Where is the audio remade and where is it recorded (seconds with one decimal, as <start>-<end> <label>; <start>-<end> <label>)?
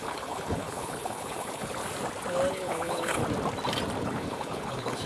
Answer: 0.0-1.8 remade; 1.8-2.5 recorded; 2.5-3.2 remade; 3.2-4.0 recorded; 4.0-5.1 remade